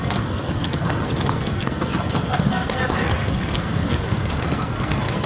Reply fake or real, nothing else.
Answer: fake